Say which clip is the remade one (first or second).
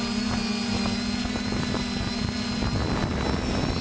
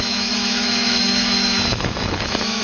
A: second